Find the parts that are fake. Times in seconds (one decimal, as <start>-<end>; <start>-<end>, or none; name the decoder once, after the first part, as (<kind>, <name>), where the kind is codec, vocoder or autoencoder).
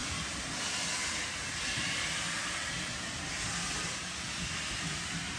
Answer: none